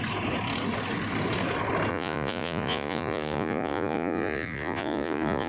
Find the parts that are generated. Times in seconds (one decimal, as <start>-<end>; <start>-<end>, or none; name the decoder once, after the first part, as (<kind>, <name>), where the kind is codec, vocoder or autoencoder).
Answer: 1.9-5.5 (vocoder, Vocos)